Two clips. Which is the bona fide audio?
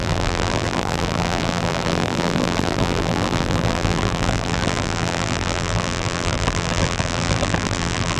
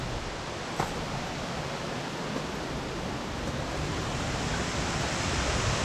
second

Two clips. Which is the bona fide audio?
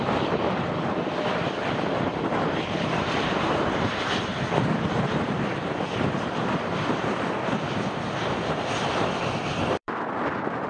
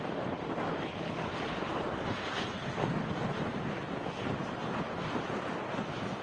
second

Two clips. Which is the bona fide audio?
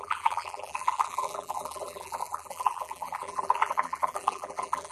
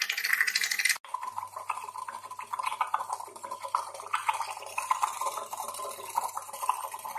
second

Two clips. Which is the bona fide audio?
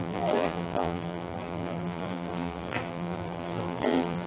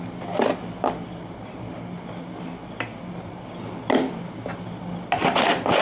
second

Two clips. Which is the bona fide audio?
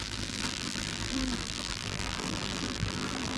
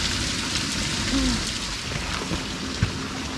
second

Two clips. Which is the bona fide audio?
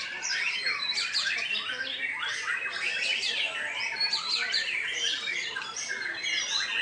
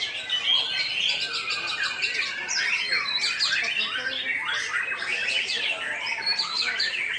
second